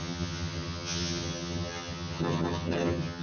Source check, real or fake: fake